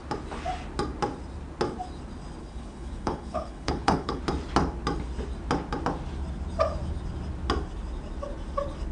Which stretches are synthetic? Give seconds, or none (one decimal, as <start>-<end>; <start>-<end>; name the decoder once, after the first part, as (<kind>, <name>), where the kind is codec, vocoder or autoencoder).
2.4-4.2 (codec, HILCodec)